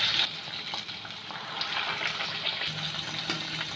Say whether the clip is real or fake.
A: real